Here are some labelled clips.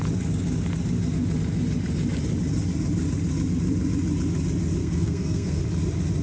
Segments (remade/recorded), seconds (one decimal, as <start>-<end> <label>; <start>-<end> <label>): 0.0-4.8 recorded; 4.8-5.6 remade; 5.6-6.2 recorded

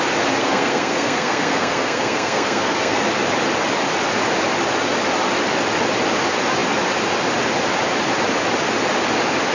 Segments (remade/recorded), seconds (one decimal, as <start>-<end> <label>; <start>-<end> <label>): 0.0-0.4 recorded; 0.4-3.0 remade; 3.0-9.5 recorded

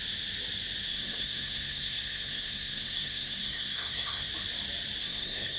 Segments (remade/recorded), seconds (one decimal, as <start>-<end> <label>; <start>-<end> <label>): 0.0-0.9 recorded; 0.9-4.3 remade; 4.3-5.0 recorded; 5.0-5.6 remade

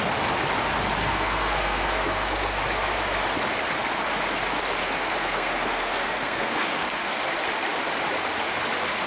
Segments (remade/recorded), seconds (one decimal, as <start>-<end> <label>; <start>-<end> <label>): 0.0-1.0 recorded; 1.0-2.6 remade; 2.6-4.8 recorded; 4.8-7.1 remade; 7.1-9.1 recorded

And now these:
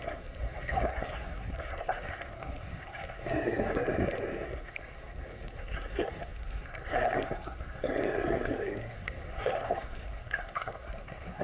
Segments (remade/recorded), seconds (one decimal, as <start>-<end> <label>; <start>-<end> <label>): 0.0-11.4 remade